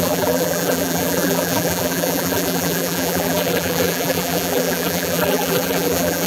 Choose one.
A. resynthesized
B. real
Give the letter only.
A